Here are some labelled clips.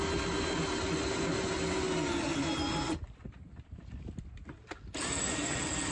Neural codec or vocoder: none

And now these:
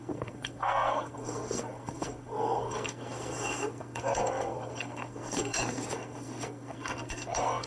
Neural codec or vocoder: codec, SNAC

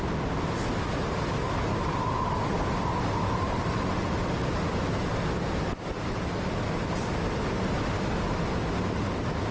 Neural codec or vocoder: none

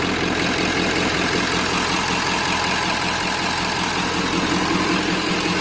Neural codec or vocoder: none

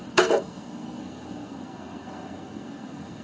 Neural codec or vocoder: codec, SNAC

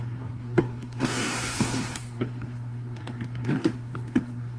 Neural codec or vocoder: codec, SNAC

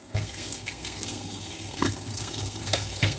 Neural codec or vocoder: codec, SNAC